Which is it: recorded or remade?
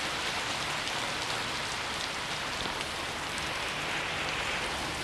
recorded